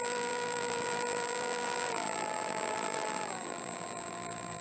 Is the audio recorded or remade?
remade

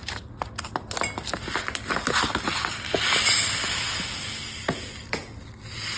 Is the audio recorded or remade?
recorded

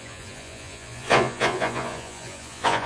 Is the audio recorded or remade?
remade